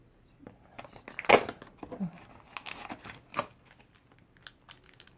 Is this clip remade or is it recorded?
recorded